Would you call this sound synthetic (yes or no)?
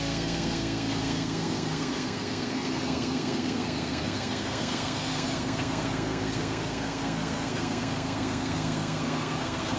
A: yes